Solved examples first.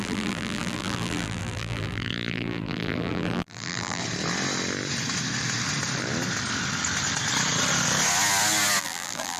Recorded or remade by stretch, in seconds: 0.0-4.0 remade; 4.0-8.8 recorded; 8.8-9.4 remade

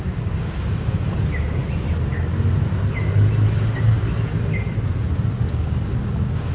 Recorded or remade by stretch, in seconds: 0.0-1.6 remade; 1.6-5.5 recorded; 5.5-6.5 remade

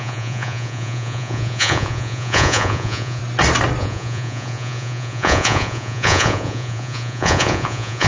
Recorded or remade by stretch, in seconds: 0.0-3.2 remade; 3.2-3.8 recorded; 3.8-8.1 remade